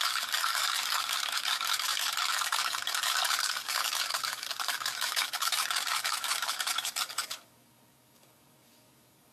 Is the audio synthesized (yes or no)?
yes